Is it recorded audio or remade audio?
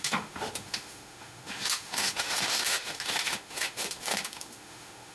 remade